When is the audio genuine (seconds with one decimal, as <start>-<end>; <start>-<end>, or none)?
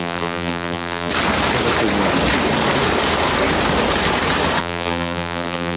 1.1-4.6